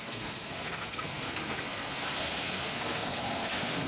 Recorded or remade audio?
remade